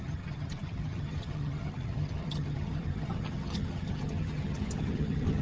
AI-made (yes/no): yes